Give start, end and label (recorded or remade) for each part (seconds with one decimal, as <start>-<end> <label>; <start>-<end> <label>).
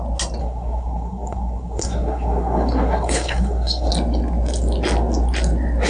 0.0-0.4 recorded; 0.4-3.9 remade; 3.9-5.9 recorded